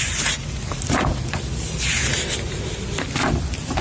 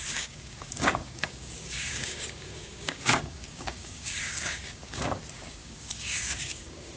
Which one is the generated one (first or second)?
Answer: second